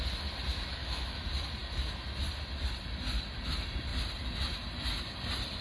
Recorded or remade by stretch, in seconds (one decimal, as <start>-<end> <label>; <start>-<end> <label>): 0.0-0.7 recorded; 0.7-1.2 remade; 1.2-5.6 recorded

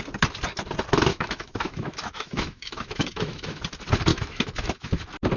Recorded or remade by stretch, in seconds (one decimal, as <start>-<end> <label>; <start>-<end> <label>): 0.0-1.1 recorded; 1.1-3.6 remade; 3.6-4.1 recorded; 4.1-5.0 remade; 5.0-5.4 recorded